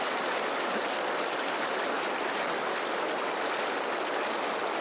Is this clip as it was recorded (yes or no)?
yes